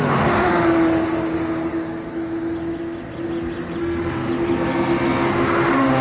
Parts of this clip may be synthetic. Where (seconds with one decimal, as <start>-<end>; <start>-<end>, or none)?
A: 0.0-0.5; 3.8-4.3; 5.3-6.0